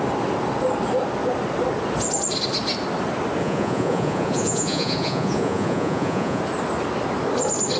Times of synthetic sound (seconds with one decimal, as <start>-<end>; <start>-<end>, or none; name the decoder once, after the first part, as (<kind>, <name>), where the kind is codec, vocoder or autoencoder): 3.4-6.4 (vocoder, Vocos)